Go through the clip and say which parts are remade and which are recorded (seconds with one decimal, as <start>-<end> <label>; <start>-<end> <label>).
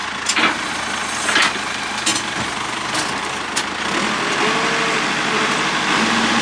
0.0-6.4 recorded